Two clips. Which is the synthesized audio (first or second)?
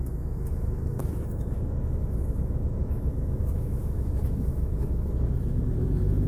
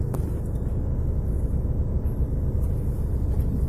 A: first